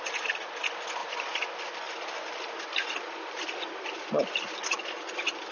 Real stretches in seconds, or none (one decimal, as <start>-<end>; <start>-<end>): 0.0-1.0; 4.3-4.7